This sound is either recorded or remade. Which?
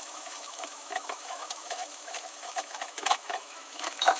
remade